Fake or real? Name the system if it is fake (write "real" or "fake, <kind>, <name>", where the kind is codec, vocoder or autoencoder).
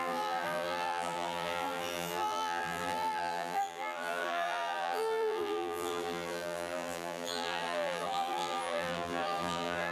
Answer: fake, vocoder, BigVGAN v2